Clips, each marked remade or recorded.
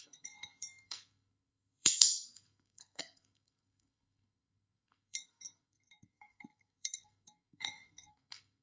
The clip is remade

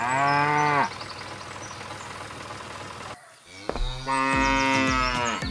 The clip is recorded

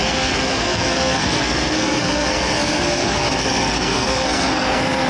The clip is remade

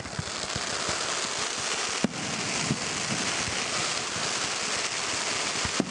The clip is recorded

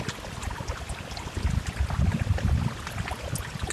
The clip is recorded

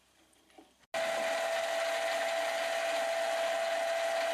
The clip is recorded